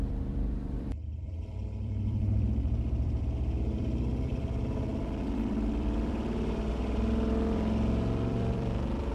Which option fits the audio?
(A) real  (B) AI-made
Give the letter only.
B